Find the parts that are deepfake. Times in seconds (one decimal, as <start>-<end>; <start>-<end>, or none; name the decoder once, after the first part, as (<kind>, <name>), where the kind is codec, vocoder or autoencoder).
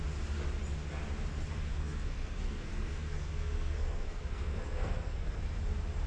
1.7-5.4 (codec, SNAC)